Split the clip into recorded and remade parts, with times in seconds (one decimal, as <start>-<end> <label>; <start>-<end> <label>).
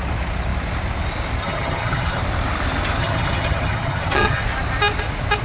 0.0-1.4 recorded; 1.4-2.2 remade; 2.2-3.0 recorded; 3.0-4.4 remade; 4.4-5.4 recorded